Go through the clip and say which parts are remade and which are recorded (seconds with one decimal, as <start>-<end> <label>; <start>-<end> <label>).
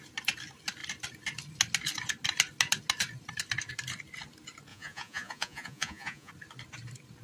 0.0-4.7 recorded; 4.7-6.3 remade; 6.3-7.2 recorded